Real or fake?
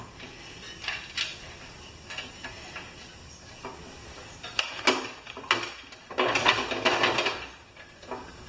real